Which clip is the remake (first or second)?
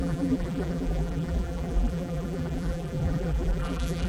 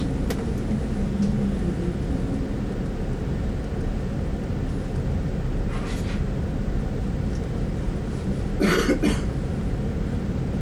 first